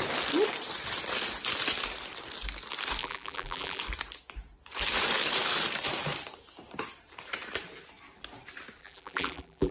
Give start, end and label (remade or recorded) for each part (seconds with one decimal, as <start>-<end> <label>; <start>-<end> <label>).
0.0-3.0 recorded; 3.0-3.8 remade; 3.8-8.8 recorded; 8.8-9.7 remade